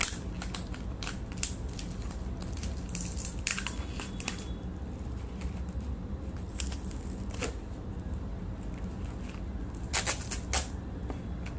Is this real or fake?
real